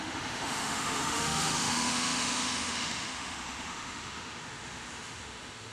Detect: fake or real fake